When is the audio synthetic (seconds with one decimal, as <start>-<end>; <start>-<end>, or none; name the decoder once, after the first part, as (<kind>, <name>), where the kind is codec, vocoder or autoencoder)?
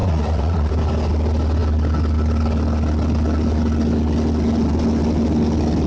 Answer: 0.0-0.7 (vocoder, Vocos)